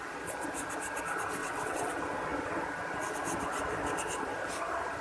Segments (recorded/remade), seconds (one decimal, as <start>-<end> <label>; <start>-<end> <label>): 0.0-1.4 recorded; 1.4-1.9 remade; 1.9-5.0 recorded